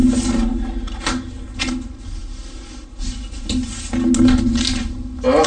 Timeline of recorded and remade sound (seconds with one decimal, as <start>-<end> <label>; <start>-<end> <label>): 0.0-5.5 recorded